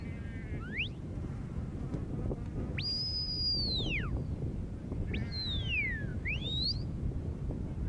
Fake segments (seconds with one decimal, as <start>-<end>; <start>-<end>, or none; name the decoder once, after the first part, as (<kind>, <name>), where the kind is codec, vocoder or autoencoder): 6.1-7.0 (vocoder, BigVGAN v2)

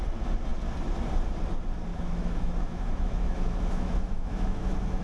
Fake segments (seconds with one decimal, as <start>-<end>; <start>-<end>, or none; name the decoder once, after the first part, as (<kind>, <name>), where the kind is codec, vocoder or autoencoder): 1.9-5.0 (autoencoder, DAC-VAE)

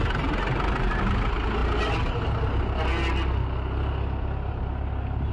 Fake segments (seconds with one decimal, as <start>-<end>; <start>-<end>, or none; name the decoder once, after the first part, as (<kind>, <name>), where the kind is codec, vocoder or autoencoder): none

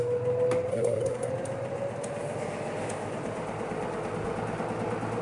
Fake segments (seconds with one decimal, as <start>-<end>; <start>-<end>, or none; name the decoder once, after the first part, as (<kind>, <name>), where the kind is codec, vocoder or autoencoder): 0.7-1.3 (codec, SNAC)

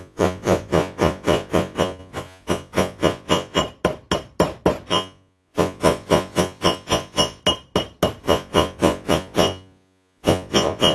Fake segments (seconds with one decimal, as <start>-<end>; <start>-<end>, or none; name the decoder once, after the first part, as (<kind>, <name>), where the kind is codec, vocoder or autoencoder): 0.0-3.6 (vocoder, Vocos); 4.9-7.4; 8.2-10.9

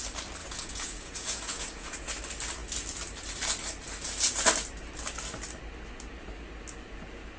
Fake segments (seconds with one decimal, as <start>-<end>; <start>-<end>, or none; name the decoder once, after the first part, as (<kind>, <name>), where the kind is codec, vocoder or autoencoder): 0.4-2.1 (vocoder, Vocos)

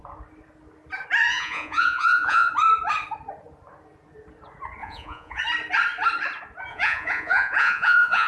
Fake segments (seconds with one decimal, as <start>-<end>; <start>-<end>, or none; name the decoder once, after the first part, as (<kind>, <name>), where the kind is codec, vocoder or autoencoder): 1.3-2.5 (vocoder, Vocos); 4.8-5.4; 6.7-8.3

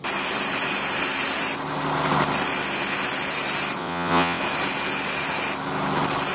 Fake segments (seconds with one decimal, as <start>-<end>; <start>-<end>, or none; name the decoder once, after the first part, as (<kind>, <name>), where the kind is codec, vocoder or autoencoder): 3.8-4.4 (vocoder, WaveNeXt)